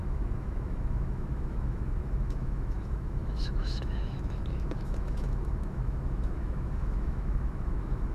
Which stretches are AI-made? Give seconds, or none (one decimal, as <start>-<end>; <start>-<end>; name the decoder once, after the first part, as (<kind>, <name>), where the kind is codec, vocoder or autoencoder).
0.0-8.1 (autoencoder, DAC-VAE)